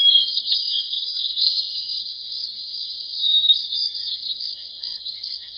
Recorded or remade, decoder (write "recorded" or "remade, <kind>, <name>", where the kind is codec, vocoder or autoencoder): remade, codec, SNAC